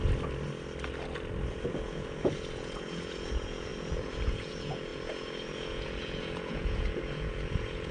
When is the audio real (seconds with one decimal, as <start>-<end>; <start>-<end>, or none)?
0.0-1.5